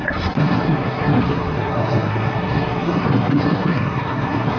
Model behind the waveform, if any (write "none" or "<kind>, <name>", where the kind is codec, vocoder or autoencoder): codec, SNAC